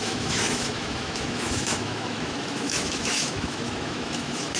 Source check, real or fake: fake